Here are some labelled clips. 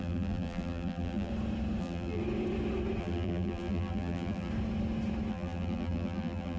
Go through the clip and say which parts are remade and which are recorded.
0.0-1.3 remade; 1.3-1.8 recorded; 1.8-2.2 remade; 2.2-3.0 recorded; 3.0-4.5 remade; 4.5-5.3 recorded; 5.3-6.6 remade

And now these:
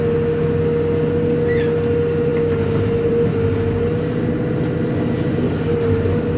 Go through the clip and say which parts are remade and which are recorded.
0.0-6.4 recorded

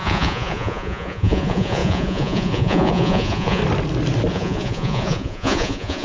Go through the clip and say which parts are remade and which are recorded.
0.0-3.6 remade; 3.6-4.3 recorded; 4.3-6.0 remade

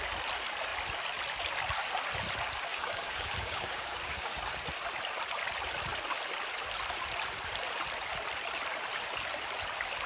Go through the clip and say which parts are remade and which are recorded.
0.0-2.7 recorded; 2.7-4.6 remade; 4.6-10.1 recorded